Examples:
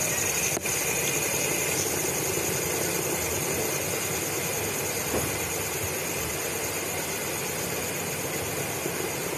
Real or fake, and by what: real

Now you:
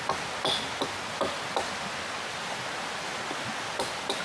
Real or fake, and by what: real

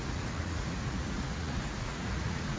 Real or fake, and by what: fake, vocoder, Vocos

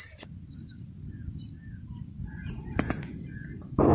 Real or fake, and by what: real